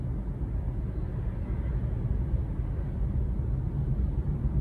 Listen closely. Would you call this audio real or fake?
real